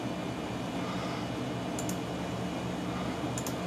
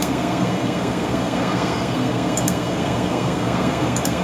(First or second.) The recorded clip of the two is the first